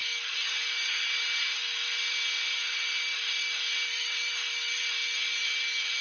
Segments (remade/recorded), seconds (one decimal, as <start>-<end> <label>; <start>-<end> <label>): 0.0-1.6 remade; 1.6-6.0 recorded